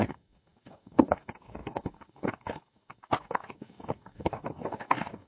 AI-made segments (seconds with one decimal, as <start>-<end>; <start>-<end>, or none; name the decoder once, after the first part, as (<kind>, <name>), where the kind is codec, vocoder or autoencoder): 0.0-5.3 (codec, DAC)